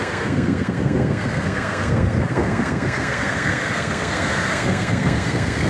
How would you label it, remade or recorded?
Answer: remade